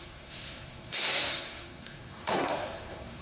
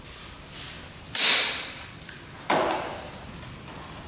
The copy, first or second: first